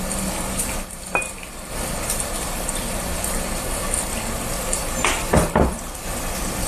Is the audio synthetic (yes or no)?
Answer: no